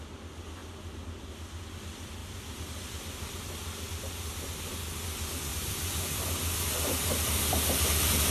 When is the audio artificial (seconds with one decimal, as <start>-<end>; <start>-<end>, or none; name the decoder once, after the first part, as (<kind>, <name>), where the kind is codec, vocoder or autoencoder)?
2.2-4.5 (vocoder, BigVGAN v2); 5.5-8.3